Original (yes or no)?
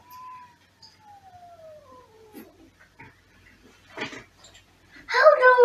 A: no